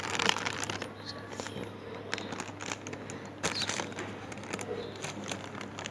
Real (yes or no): yes